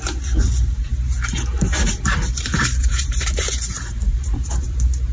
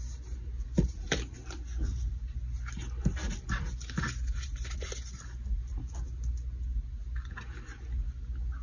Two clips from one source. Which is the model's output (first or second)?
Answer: first